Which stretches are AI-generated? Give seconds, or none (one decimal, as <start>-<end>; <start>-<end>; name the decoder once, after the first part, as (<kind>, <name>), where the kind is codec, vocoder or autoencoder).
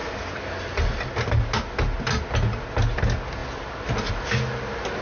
none